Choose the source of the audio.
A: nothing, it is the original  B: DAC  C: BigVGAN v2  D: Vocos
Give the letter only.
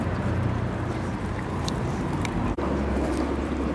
C